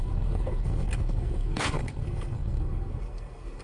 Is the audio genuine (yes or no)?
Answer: no